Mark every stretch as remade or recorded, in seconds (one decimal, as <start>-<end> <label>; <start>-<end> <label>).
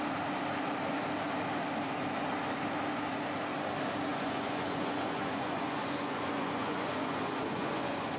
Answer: 0.0-4.1 recorded; 4.1-8.2 remade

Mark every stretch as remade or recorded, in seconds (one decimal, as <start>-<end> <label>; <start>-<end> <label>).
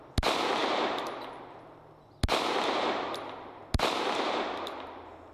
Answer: 0.0-5.3 recorded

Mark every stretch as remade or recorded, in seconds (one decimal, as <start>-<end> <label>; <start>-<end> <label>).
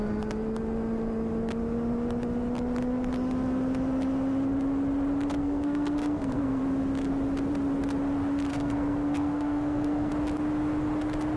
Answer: 0.0-5.4 recorded; 5.4-6.6 remade; 6.6-8.5 recorded; 8.5-10.1 remade; 10.1-11.4 recorded